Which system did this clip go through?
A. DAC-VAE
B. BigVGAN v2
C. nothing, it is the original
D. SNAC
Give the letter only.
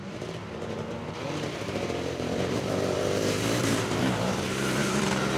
B